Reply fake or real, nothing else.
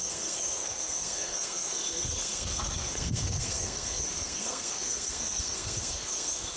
fake